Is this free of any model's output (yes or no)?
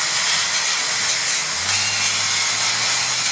yes